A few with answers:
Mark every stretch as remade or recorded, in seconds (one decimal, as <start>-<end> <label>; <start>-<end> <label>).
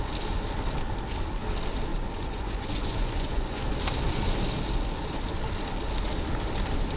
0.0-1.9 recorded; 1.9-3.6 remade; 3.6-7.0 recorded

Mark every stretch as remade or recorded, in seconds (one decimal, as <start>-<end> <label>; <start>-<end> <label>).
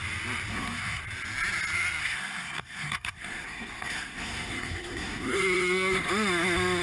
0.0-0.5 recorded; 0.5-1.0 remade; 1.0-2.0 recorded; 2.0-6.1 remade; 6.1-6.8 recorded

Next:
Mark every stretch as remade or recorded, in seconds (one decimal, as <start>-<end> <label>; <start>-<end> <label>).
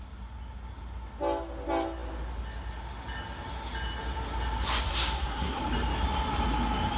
0.0-4.9 recorded; 4.9-5.6 remade; 5.6-7.0 recorded